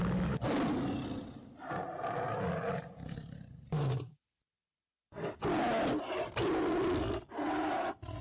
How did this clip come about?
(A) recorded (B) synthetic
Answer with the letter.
A